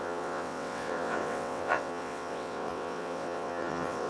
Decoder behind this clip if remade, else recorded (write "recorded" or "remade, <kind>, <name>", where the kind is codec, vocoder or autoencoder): remade, vocoder, WaveNeXt